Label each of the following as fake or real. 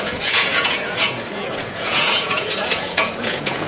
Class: fake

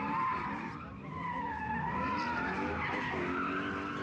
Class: real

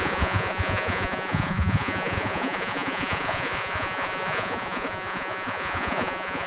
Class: fake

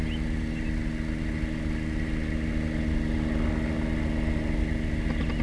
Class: real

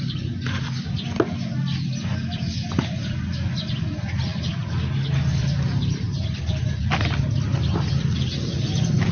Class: real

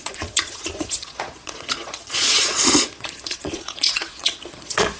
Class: fake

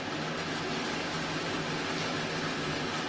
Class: real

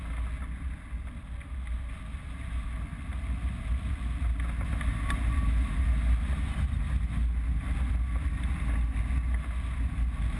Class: real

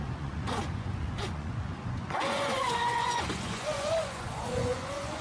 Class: fake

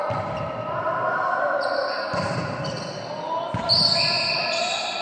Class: real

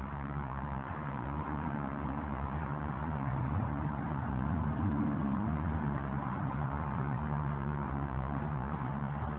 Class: fake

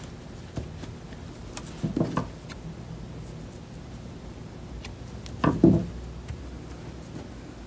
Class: real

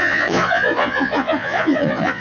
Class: fake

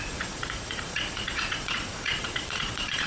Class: fake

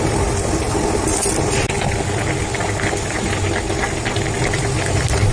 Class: real